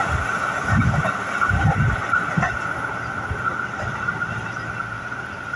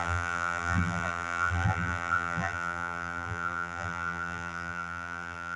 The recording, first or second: first